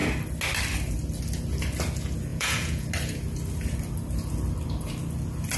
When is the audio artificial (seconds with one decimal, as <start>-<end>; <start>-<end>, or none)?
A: 2.3-2.9